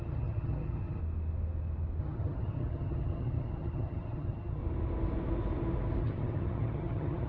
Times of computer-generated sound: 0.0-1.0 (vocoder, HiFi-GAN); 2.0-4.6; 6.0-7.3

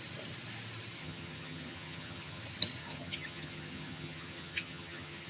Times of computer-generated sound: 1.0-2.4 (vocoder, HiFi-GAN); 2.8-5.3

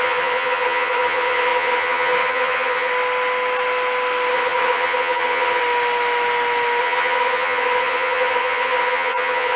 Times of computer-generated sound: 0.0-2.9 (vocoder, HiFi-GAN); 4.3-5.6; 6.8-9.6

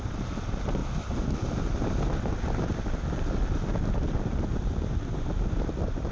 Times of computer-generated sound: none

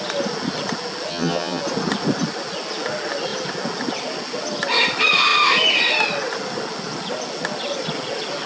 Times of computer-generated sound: 1.1-1.6 (vocoder, HiFi-GAN)

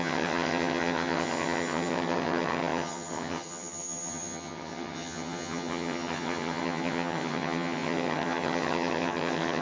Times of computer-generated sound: 0.0-9.6 (vocoder, HiFi-GAN)